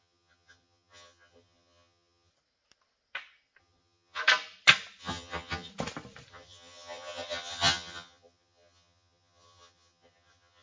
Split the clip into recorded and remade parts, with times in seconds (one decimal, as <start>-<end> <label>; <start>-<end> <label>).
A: 0.0-2.3 remade; 2.3-3.6 recorded; 3.6-4.2 remade; 4.2-5.0 recorded; 5.0-5.7 remade; 5.7-6.3 recorded; 6.3-10.6 remade